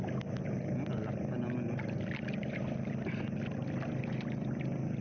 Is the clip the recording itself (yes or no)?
yes